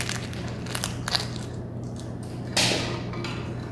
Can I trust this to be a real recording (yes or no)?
yes